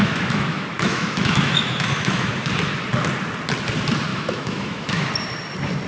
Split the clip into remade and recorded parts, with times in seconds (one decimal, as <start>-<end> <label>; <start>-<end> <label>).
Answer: 0.0-2.3 remade; 2.3-4.1 recorded; 4.1-5.1 remade; 5.1-5.9 recorded